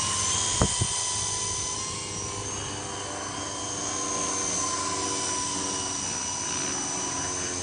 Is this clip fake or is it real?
real